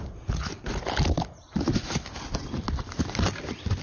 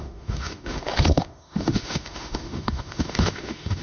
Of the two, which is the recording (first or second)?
first